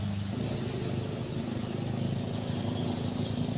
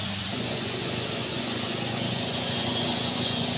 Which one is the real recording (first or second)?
first